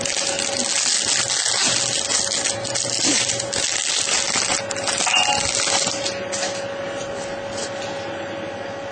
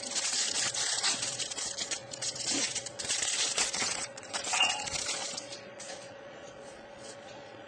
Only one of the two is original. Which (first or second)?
first